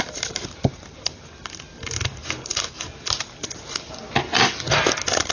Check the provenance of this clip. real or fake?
real